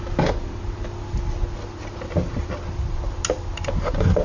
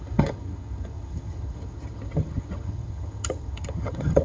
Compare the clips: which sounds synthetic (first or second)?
second